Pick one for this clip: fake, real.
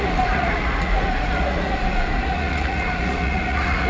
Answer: fake